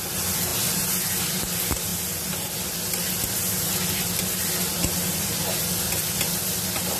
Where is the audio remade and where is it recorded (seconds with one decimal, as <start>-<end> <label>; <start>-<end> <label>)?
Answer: 0.0-7.0 recorded

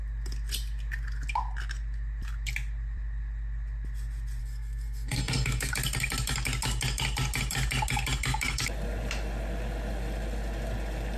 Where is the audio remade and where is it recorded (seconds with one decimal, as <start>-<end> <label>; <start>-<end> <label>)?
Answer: 0.0-4.4 recorded; 4.4-5.7 remade; 5.7-11.2 recorded

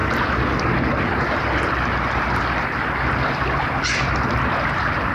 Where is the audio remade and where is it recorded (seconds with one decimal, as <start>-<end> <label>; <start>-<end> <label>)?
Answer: 0.0-5.1 recorded

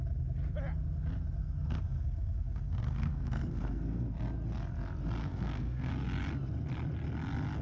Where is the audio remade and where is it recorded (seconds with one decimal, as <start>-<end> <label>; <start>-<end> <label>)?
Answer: 0.0-1.4 recorded; 1.4-4.1 remade; 4.1-5.2 recorded; 5.2-5.9 remade; 5.9-7.6 recorded

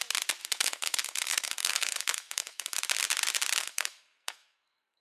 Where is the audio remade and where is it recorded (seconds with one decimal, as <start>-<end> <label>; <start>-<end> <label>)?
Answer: 0.0-0.4 recorded; 0.4-2.8 remade; 2.8-3.6 recorded; 3.6-5.0 remade

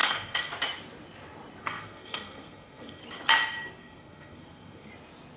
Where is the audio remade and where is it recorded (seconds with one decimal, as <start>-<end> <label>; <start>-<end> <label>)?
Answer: 0.0-0.5 remade; 0.5-1.6 recorded; 1.6-3.0 remade; 3.0-3.8 recorded; 3.8-4.9 remade; 4.9-5.4 recorded

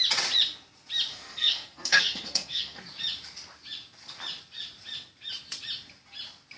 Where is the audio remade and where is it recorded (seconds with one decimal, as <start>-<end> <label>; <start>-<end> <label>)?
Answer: 0.0-1.1 recorded; 1.1-2.8 remade; 2.8-6.6 recorded

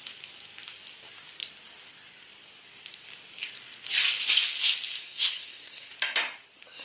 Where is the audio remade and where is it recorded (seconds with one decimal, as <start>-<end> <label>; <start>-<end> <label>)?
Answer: 0.0-5.0 recorded; 5.0-5.9 remade; 5.9-6.8 recorded